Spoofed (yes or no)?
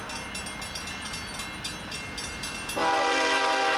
no